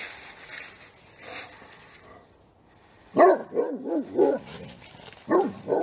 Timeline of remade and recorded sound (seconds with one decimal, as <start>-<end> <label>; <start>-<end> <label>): 0.0-5.8 recorded